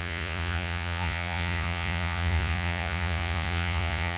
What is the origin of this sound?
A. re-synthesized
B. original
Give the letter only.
A